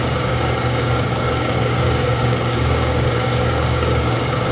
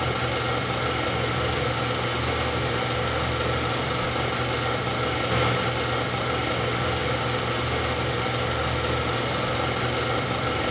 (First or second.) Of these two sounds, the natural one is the second